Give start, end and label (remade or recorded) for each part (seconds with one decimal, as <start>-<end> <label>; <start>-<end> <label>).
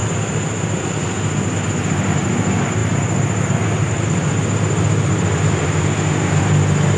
0.0-7.0 recorded